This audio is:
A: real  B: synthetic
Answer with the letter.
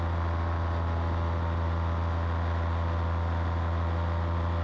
A